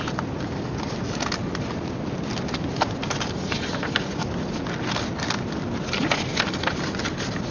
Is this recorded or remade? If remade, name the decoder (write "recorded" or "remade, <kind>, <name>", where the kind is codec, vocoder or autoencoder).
recorded